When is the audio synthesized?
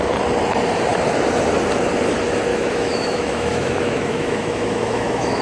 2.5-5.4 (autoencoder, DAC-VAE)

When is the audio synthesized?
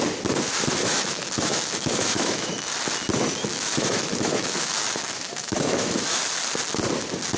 0.8-2.6 (autoencoder, DAC-VAE); 3.5-6.2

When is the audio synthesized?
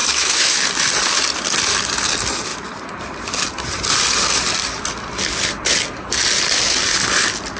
0.0-0.6 (autoencoder, DAC-VAE)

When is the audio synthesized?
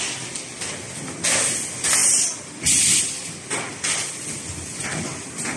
none